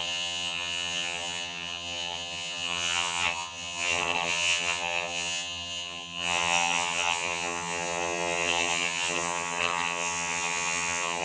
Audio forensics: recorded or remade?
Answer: remade